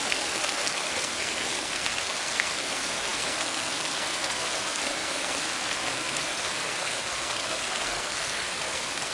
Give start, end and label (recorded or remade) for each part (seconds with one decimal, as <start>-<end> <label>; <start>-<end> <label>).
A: 0.0-9.1 remade